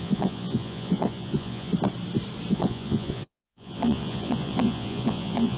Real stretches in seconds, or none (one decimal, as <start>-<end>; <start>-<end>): 1.7-2.5